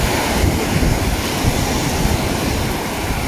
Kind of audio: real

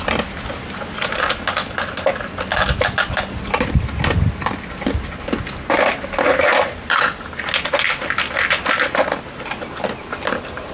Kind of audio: real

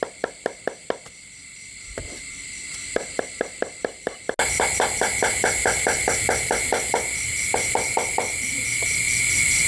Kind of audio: real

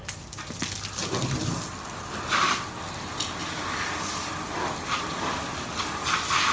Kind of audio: real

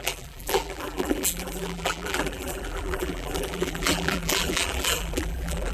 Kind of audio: fake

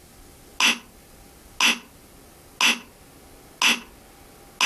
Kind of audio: real